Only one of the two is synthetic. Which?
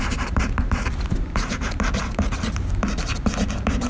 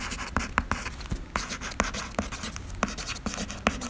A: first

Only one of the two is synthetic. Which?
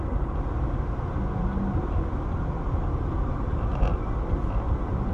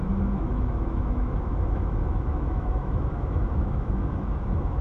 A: second